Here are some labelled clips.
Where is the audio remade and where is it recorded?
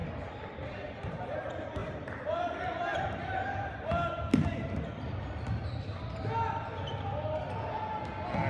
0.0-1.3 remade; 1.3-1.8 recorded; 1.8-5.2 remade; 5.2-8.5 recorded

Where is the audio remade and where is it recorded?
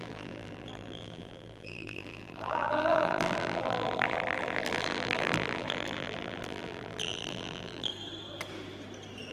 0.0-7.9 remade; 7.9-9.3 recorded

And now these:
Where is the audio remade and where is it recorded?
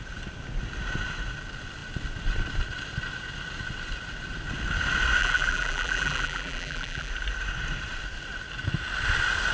0.0-5.2 recorded; 5.2-7.1 remade; 7.1-9.5 recorded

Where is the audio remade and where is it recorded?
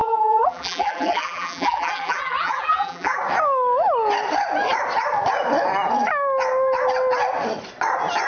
0.0-3.2 remade; 3.2-8.3 recorded